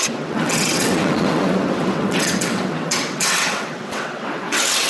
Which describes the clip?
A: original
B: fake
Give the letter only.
B